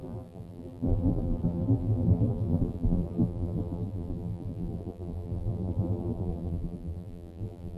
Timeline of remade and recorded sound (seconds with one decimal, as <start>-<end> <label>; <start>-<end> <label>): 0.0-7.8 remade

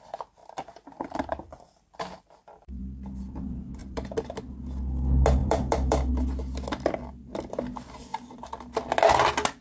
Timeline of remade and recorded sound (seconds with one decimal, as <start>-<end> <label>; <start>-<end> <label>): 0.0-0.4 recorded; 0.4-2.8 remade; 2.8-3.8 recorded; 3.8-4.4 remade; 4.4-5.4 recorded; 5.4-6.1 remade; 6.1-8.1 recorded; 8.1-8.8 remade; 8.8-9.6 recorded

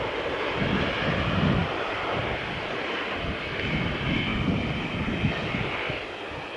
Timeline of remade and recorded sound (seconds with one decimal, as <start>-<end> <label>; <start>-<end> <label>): 0.0-1.6 recorded; 1.6-2.2 remade; 2.2-4.3 recorded; 4.3-4.9 remade; 4.9-6.6 recorded

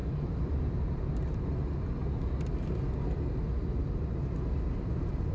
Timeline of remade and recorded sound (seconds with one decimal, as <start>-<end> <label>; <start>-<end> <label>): 0.0-1.0 remade; 1.0-5.3 recorded

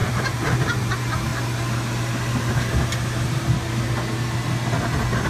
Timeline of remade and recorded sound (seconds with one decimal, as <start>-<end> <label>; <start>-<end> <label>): 0.0-0.6 remade; 0.6-5.3 recorded